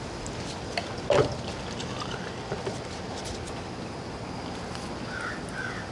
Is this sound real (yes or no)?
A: yes